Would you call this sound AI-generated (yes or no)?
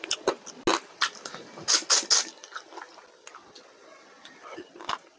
no